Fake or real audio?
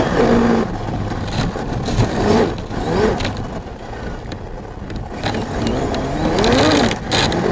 real